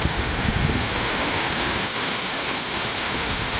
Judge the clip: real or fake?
fake